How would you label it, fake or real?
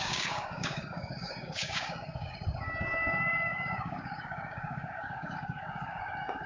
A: fake